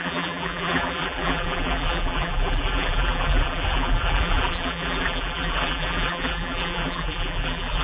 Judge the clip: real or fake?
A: fake